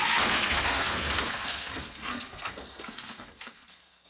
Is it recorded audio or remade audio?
remade